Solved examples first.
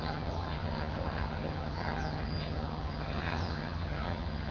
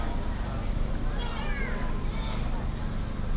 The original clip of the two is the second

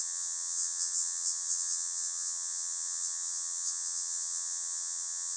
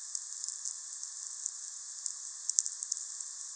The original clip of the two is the second